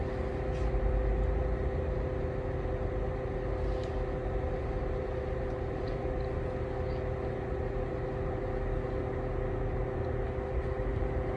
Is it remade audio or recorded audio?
recorded